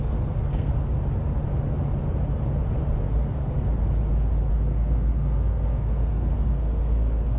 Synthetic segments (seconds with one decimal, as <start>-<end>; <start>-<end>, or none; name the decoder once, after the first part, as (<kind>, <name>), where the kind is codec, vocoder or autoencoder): 0.0-0.7 (codec, SNAC); 4.5-7.4